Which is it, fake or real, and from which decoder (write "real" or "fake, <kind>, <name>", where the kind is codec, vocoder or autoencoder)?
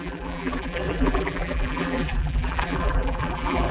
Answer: fake, vocoder, BigVGAN v2